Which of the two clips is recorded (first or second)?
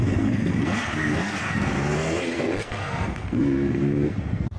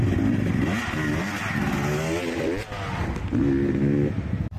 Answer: second